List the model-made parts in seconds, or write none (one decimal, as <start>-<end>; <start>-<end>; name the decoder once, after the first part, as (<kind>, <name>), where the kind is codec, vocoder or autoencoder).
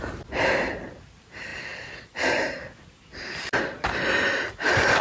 0.0-1.5 (vocoder, BigVGAN v2); 4.5-5.0